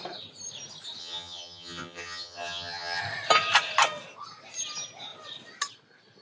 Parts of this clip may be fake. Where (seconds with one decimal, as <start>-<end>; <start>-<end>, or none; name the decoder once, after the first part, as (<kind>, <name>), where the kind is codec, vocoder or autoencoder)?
1.0-3.0 (vocoder, HiFi-GAN)